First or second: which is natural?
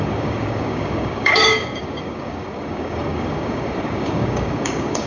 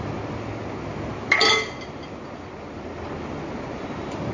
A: second